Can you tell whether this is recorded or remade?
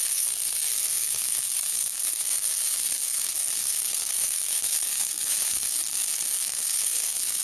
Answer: remade